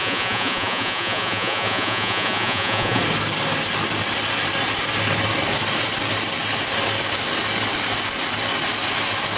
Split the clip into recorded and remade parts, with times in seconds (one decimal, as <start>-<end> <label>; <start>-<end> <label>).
0.0-3.0 remade; 3.0-9.4 recorded